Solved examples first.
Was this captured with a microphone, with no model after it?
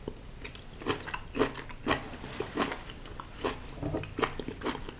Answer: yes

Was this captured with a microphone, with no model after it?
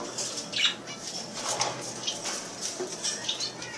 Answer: yes